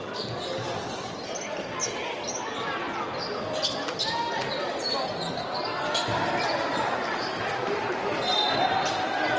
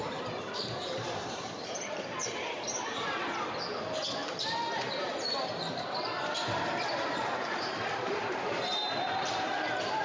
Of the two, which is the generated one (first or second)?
second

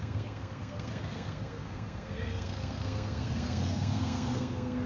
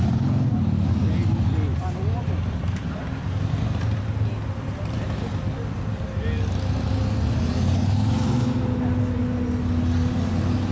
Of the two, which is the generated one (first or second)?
first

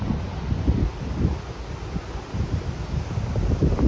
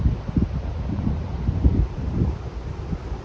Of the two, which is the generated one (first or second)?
second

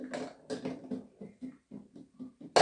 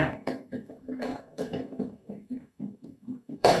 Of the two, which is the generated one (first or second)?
second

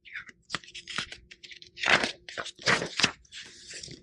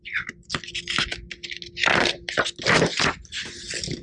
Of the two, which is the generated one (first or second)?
first